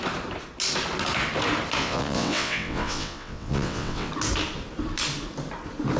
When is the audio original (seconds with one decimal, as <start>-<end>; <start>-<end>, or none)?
0.0-1.8; 4.1-6.0